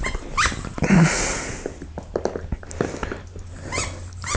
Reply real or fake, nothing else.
real